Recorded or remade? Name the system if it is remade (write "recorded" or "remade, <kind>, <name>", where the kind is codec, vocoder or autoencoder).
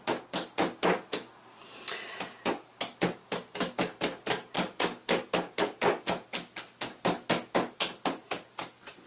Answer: recorded